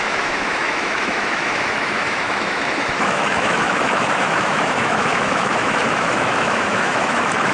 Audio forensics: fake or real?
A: fake